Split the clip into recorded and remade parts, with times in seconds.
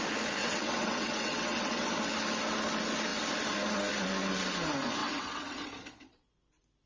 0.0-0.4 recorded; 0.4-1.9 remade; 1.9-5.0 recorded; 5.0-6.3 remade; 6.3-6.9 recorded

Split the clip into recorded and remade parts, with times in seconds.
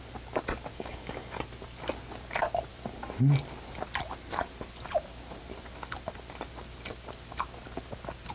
0.0-0.7 recorded; 0.7-1.4 remade; 1.4-8.3 recorded